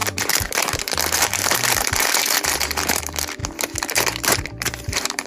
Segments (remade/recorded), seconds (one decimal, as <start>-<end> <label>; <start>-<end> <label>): 0.0-3.4 remade; 3.4-3.9 recorded; 3.9-5.3 remade